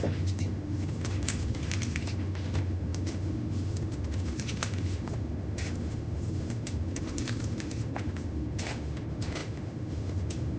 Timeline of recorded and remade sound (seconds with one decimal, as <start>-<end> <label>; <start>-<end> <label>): 0.0-10.6 remade